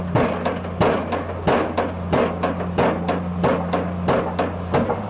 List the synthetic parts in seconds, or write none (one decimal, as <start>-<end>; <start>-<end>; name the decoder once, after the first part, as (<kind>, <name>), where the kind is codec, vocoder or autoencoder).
none